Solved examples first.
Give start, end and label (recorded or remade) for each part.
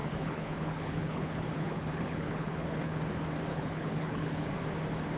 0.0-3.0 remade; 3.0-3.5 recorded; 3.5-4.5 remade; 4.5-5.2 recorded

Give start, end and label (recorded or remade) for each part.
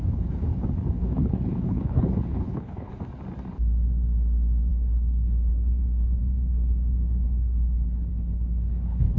0.0-0.5 remade; 0.5-1.0 recorded; 1.0-2.9 remade; 2.9-4.7 recorded; 4.7-9.2 remade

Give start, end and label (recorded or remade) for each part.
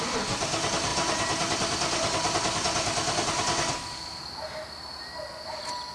0.0-5.9 recorded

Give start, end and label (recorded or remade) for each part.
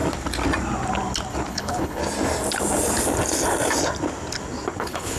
0.0-1.5 recorded; 1.5-2.0 remade; 2.0-4.8 recorded; 4.8-5.2 remade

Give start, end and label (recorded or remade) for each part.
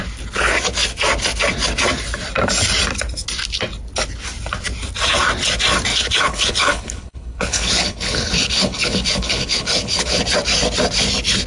0.0-5.9 recorded; 5.9-10.2 remade; 10.2-11.5 recorded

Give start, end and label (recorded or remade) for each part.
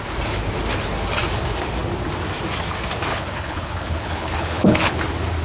0.0-3.1 recorded; 3.1-4.9 remade; 4.9-5.4 recorded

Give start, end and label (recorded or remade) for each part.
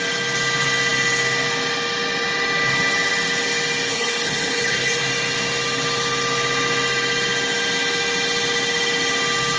0.0-3.9 recorded; 3.9-5.0 remade; 5.0-9.6 recorded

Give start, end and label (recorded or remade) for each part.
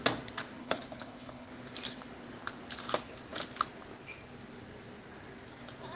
0.0-0.6 recorded; 0.6-1.5 remade; 1.5-6.0 recorded